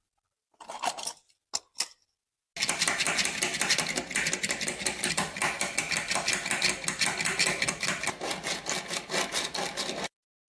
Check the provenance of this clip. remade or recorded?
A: recorded